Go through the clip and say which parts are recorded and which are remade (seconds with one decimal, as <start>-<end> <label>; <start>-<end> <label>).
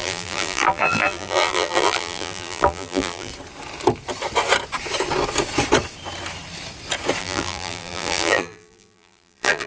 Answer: 0.0-3.3 remade; 3.3-7.2 recorded; 7.2-9.7 remade